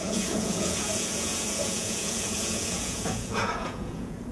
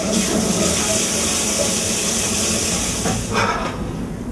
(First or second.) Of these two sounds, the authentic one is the second